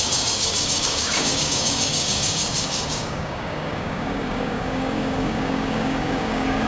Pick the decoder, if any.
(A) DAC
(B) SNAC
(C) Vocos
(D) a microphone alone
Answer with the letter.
A